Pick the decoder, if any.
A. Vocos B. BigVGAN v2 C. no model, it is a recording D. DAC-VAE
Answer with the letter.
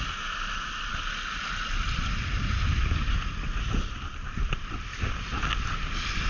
C